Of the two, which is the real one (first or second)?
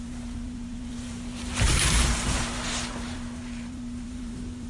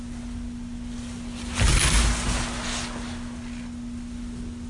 second